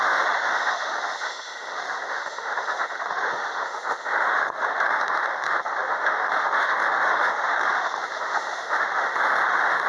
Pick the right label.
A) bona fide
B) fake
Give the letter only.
B